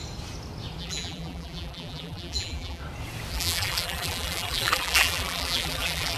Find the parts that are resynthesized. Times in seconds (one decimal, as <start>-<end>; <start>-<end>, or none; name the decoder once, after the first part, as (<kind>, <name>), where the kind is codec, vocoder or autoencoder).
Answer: 0.8-2.8 (vocoder, BigVGAN v2); 3.3-6.2

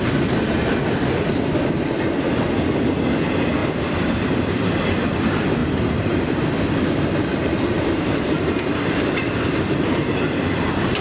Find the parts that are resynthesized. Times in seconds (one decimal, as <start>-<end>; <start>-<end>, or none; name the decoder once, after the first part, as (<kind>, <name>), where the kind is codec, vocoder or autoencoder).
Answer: 3.6-4.7 (vocoder, BigVGAN v2); 5.6-6.4; 7.3-11.0